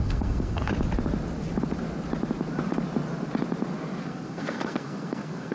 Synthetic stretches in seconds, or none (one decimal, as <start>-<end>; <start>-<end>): 0.0-0.7; 4.0-5.5